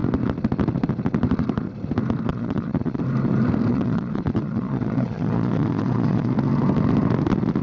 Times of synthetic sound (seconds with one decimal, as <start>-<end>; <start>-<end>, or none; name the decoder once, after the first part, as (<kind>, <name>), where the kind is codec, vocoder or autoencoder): 2.3-3.0 (vocoder, Vocos); 3.7-6.3